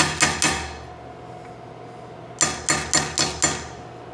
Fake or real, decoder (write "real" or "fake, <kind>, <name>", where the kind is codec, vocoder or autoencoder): real